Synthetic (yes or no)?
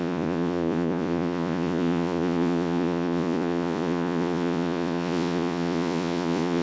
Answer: yes